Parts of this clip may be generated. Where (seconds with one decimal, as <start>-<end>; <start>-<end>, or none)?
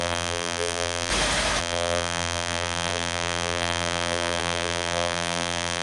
0.0-1.1; 1.6-5.8